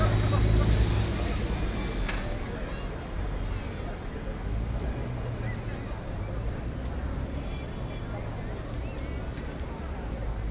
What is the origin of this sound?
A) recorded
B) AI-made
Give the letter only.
A